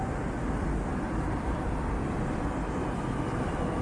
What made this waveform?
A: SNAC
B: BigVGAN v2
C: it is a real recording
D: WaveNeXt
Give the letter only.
C